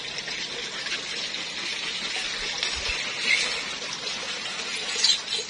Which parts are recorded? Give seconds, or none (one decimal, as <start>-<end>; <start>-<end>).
0.0-5.5